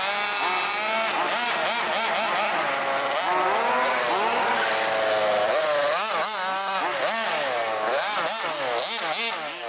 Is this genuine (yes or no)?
yes